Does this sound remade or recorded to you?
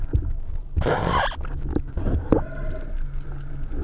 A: recorded